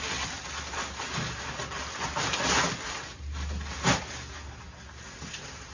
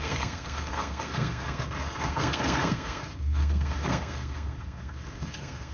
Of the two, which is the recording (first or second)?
first